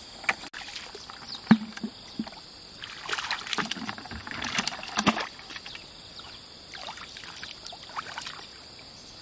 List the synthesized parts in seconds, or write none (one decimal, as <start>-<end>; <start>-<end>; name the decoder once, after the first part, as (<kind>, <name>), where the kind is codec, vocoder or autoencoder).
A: 1.9-5.2 (vocoder, BigVGAN v2)